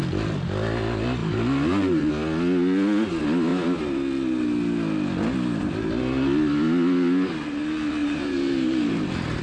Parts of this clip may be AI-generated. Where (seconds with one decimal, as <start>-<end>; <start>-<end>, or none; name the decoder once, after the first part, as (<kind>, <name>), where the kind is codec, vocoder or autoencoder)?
1.2-2.1 (vocoder, BigVGAN v2); 8.0-9.4